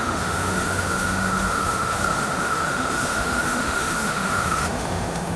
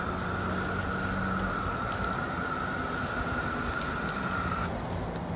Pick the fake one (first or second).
first